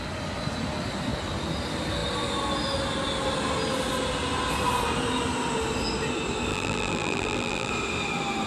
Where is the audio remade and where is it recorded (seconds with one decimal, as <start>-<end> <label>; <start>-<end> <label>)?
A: 0.0-6.5 recorded; 6.5-7.7 remade; 7.7-8.5 recorded